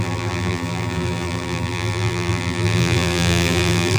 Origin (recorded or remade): remade